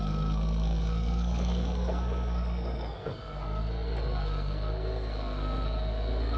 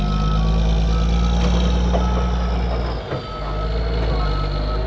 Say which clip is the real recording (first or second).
second